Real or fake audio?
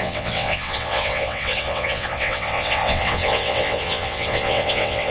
fake